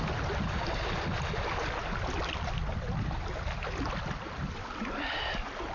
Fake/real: real